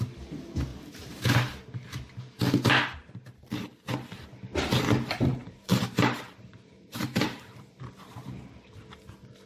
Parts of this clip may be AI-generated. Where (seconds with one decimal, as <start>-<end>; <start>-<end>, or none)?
0.7-1.6; 5.4-8.7